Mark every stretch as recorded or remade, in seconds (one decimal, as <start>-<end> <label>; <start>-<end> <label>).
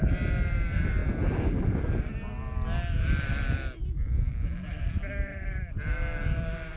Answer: 0.0-6.8 recorded